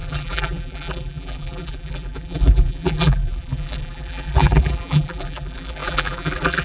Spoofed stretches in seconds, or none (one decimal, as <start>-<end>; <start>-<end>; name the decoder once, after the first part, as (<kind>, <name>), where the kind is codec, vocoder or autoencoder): 0.0-6.6 (vocoder, BigVGAN v2)